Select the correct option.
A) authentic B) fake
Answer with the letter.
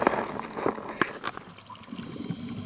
A